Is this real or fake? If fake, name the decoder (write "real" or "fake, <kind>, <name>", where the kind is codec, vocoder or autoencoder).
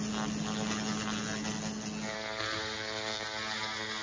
real